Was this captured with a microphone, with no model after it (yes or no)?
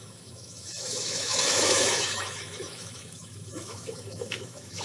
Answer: no